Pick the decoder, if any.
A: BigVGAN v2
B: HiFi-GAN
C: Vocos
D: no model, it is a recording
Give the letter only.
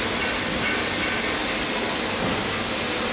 D